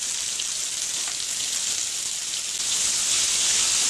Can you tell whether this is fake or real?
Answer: real